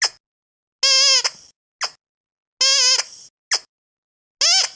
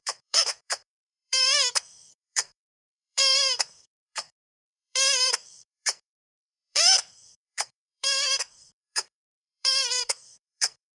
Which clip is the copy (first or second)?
second